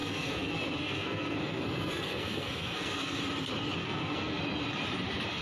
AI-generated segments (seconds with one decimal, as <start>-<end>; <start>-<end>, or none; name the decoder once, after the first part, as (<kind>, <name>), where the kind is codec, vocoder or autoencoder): 0.0-3.2 (codec, SNAC); 3.8-4.4